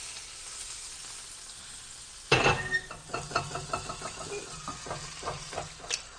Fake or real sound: real